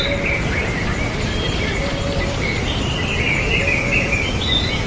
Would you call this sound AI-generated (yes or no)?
no